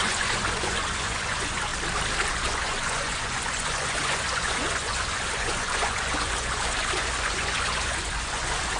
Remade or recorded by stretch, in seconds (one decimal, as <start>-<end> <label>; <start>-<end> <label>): 0.0-1.7 remade; 1.7-2.3 recorded; 2.3-8.8 remade